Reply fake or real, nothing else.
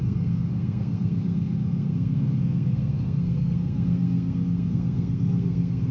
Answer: fake